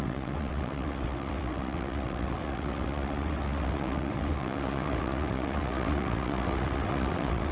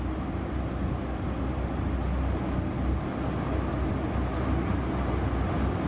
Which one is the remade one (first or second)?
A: first